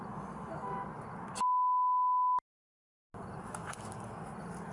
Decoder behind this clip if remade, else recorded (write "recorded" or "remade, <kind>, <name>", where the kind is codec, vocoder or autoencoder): recorded